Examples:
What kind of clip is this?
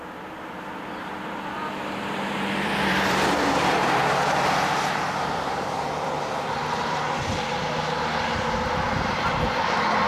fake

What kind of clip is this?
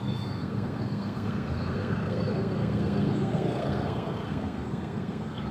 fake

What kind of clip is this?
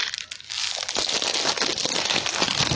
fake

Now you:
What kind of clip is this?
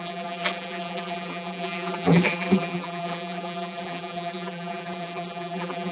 fake